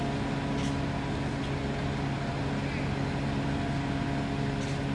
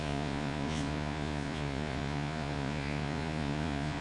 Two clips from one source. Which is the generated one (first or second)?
second